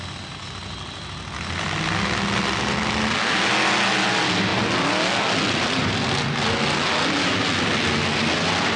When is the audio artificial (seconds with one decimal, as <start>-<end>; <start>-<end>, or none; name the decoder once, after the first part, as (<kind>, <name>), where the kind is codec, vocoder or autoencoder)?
none